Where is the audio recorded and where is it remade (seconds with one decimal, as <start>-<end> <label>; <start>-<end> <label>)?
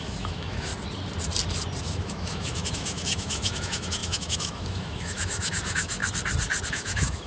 0.0-0.7 remade; 0.7-1.8 recorded; 1.8-6.0 remade; 6.0-6.7 recorded; 6.7-7.3 remade